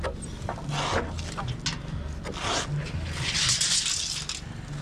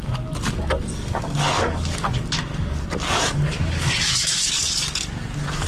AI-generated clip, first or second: second